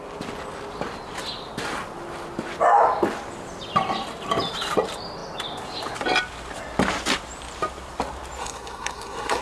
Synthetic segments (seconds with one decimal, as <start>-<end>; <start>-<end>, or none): 8.4-9.4

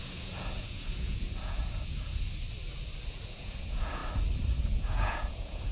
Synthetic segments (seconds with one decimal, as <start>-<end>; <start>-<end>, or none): 0.0-2.1; 3.1-4.0; 4.6-5.7